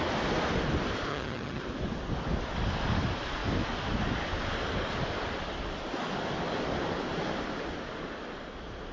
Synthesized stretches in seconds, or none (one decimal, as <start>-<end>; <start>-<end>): 1.1-1.6